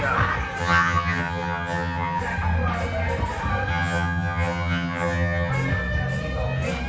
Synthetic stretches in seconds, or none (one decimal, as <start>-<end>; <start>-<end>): 0.6-2.2; 3.7-5.5